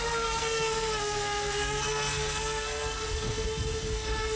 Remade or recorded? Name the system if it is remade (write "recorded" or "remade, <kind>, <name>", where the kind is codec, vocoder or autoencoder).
remade, codec, SNAC